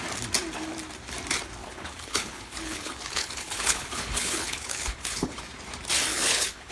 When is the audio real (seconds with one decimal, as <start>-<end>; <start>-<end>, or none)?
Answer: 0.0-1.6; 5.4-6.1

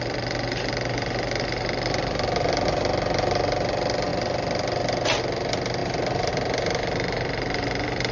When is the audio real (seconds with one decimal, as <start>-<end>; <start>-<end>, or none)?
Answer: 0.0-8.1

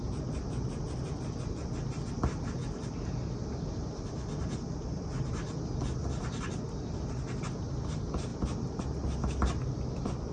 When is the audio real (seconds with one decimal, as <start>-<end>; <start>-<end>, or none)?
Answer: 0.0-10.3